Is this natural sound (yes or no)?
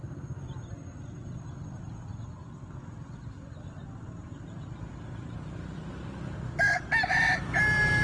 yes